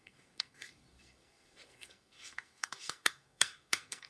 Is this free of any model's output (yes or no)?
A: no